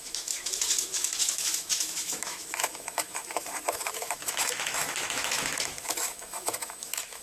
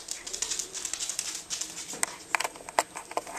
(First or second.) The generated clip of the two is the first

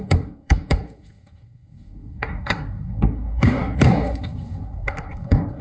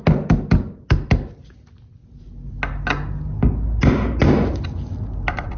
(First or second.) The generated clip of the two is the first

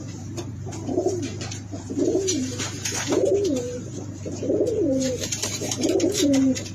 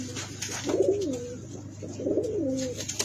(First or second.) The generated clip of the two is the first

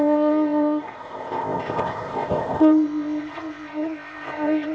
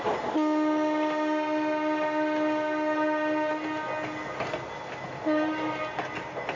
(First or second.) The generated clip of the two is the first